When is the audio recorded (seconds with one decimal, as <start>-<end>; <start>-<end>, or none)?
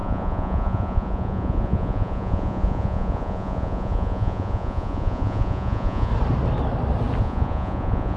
6.1-7.2